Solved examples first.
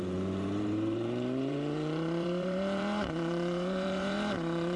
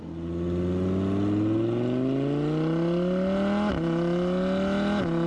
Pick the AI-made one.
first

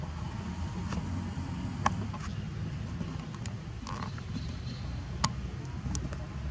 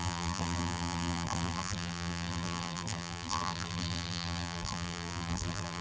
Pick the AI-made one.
second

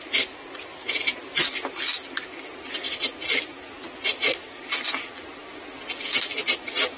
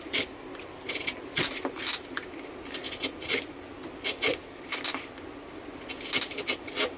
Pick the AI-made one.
first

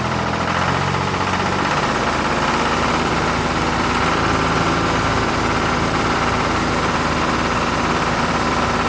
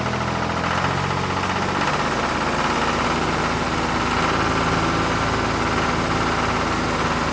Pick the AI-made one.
first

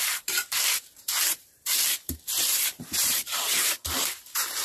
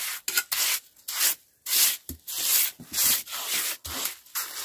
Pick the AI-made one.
first